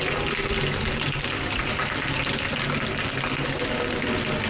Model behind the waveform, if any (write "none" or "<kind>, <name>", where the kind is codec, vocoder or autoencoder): none